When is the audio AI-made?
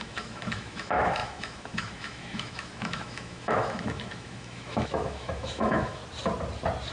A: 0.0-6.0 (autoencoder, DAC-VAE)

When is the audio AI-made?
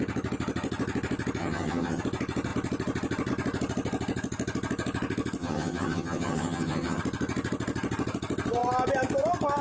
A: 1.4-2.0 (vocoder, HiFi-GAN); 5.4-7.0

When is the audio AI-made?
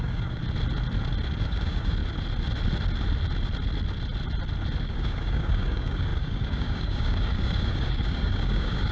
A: 0.0-0.4 (codec, DAC); 1.4-2.0; 4.8-8.9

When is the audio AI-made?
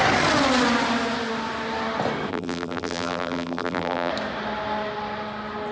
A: 2.3-4.1 (vocoder, BigVGAN v2)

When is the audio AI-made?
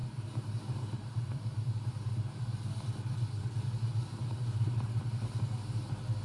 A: 0.0-1.9 (vocoder, BigVGAN v2); 4.2-5.5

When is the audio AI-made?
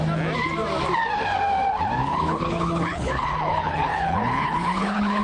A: 2.0-5.2 (codec, HILCodec)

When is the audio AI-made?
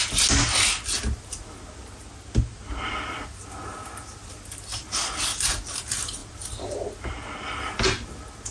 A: none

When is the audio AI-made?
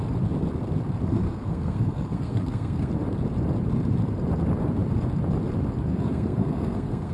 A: 1.1-2.9 (codec, SNAC); 5.9-7.1